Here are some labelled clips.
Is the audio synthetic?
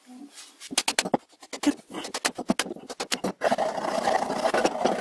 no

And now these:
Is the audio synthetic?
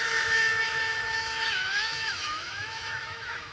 yes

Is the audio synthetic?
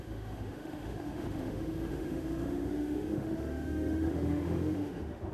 yes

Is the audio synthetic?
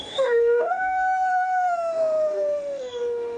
yes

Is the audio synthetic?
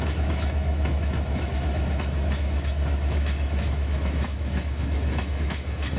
yes